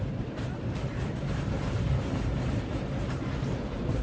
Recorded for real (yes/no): no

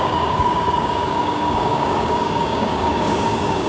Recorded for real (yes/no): no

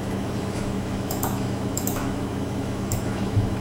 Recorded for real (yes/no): no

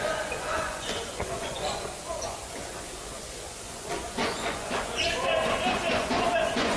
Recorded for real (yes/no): no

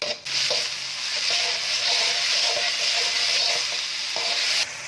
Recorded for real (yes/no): yes